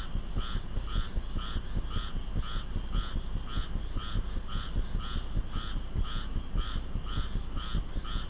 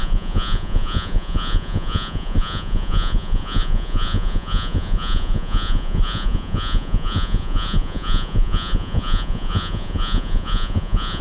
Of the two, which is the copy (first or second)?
second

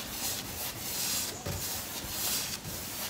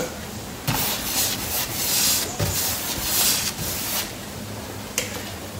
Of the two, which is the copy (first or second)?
first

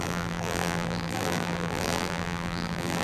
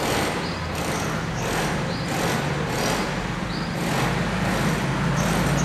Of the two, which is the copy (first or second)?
first